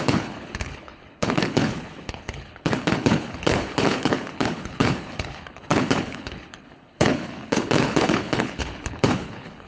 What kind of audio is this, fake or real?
fake